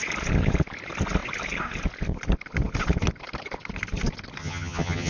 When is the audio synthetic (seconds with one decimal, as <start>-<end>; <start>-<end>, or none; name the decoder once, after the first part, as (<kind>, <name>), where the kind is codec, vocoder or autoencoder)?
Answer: 4.4-5.1 (vocoder, HiFi-GAN)

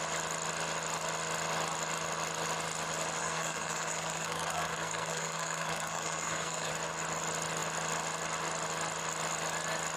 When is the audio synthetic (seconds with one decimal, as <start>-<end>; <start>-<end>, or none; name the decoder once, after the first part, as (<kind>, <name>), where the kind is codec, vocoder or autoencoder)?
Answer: 3.2-6.7 (codec, SNAC)

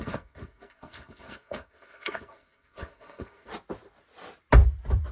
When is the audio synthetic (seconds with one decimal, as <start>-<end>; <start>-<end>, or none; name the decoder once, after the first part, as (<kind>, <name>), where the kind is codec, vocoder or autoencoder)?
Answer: 0.0-3.5 (codec, SNAC)

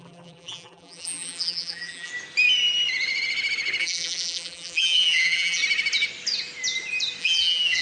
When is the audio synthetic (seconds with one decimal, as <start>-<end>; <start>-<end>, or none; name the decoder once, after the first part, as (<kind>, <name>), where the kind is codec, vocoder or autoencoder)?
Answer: 0.0-2.1 (vocoder, BigVGAN v2); 3.8-5.6; 7.2-7.8

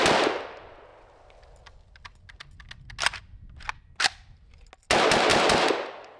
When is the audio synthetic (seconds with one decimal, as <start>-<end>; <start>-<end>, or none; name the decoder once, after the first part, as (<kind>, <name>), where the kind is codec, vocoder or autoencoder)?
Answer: 5.3-6.2 (vocoder, BigVGAN v2)

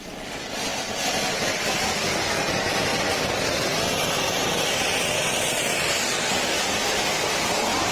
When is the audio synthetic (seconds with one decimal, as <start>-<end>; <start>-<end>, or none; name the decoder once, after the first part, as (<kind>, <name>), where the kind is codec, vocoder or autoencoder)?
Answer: 0.0-7.9 (vocoder, BigVGAN v2)